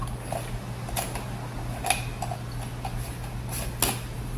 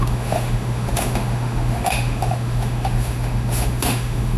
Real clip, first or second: first